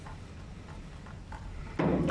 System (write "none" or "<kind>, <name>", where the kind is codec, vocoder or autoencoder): vocoder, BigVGAN v2